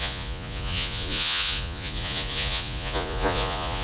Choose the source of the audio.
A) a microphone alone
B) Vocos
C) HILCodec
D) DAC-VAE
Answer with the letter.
B